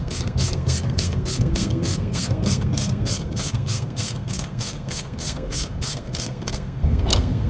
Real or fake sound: fake